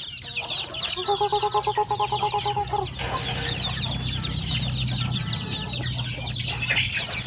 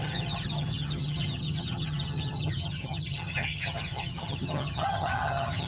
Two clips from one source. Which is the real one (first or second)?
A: first